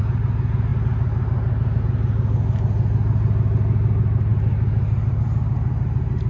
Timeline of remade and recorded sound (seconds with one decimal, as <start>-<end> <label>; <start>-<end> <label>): 0.0-6.3 recorded